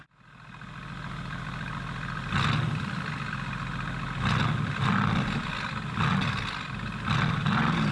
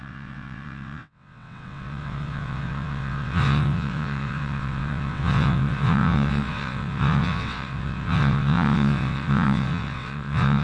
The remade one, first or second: second